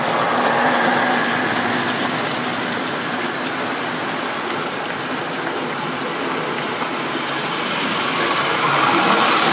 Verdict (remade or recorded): recorded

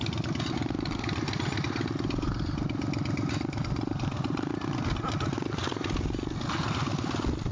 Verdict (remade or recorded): recorded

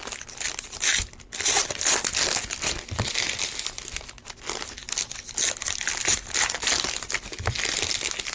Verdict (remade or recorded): recorded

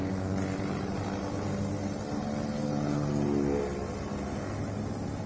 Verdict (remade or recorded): recorded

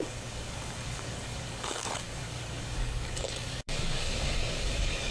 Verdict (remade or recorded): remade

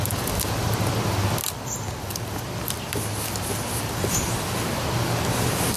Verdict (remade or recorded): recorded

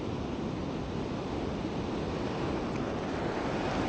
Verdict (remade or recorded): recorded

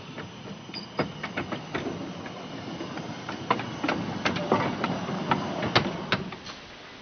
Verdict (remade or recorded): recorded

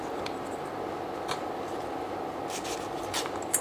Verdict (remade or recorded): recorded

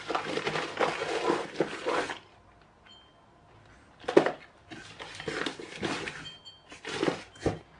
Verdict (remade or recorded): recorded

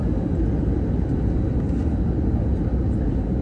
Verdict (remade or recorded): recorded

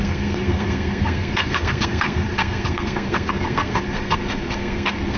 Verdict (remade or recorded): remade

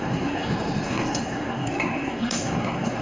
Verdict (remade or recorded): remade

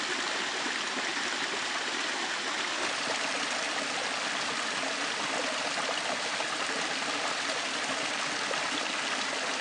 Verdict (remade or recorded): recorded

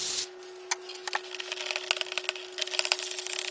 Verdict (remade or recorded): recorded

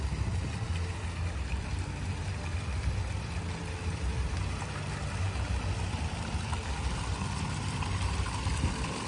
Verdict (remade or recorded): recorded